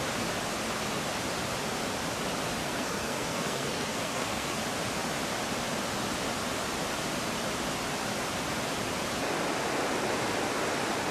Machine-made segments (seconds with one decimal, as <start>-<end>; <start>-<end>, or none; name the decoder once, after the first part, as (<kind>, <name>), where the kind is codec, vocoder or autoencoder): 2.6-4.6 (codec, SNAC)